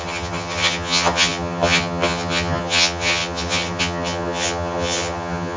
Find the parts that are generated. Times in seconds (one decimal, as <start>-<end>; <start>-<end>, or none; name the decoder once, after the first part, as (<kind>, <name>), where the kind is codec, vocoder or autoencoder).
0.0-5.6 (vocoder, HiFi-GAN)